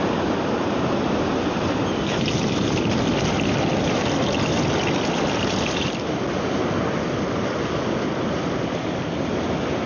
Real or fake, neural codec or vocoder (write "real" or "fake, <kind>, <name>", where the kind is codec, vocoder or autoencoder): real